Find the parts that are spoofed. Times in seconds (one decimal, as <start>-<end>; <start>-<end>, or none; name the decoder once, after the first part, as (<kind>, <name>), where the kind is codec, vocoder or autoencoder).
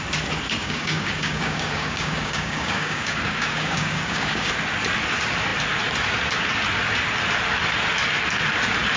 0.6-4.5 (codec, DAC)